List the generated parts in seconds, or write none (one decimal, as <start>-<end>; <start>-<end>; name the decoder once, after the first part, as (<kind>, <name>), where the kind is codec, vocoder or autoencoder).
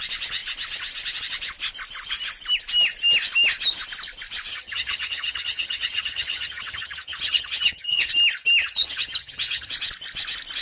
4.5-8.1 (vocoder, HiFi-GAN); 8.6-9.7